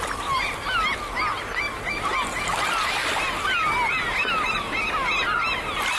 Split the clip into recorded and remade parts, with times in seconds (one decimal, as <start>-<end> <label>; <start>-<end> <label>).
0.0-6.0 recorded